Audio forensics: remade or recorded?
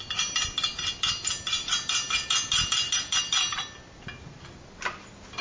recorded